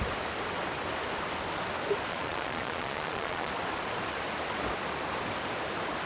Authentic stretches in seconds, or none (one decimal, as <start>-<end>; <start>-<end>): 0.0-2.1; 3.5-6.1

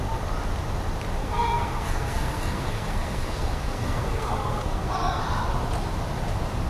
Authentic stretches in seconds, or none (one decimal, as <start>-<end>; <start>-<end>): 0.0-1.2; 5.2-6.7

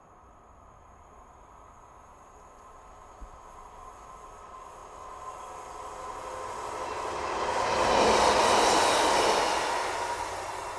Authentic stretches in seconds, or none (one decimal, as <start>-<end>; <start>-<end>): 0.0-10.8

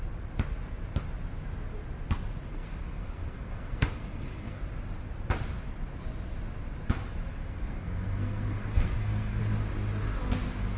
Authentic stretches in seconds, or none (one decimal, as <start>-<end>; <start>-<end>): 0.0-2.5; 4.6-7.4; 9.4-10.8